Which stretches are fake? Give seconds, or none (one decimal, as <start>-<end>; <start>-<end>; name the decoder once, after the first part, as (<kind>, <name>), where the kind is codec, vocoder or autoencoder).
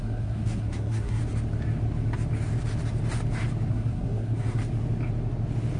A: 0.0-1.2 (codec, SNAC); 3.7-4.6